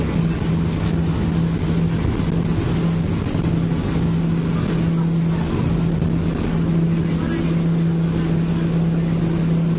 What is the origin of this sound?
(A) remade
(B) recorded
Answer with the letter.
B